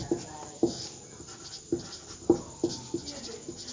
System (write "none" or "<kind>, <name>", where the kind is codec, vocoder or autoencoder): none